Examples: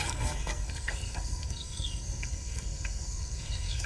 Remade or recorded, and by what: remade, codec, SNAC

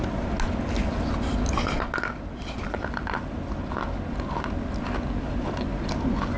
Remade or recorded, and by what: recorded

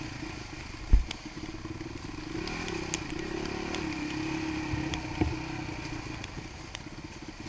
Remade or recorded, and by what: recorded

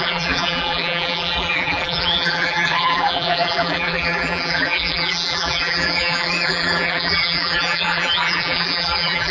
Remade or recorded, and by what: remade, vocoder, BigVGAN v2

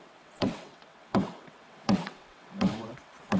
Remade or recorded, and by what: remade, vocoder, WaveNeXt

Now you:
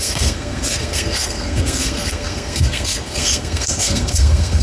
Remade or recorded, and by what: remade, codec, SNAC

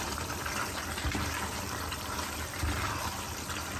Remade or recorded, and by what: recorded